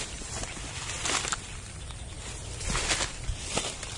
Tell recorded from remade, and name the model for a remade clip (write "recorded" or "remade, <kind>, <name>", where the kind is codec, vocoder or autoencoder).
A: remade, vocoder, BigVGAN v2